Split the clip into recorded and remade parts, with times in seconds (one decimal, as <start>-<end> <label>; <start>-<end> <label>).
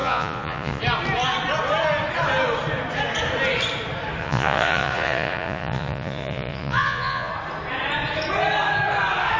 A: 0.0-0.8 remade; 0.8-4.2 recorded; 4.2-7.3 remade; 7.3-9.4 recorded